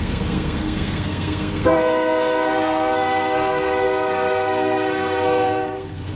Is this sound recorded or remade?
remade